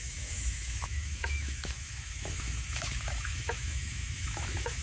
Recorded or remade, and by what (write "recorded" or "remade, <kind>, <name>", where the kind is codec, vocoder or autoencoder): remade, autoencoder, DAC-VAE